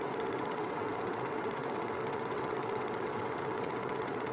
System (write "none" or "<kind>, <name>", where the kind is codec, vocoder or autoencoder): vocoder, WaveNeXt